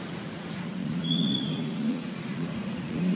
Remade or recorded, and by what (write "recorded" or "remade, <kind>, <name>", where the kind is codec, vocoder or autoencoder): remade, vocoder, Vocos